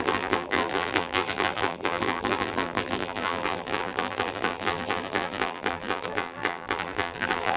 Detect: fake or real fake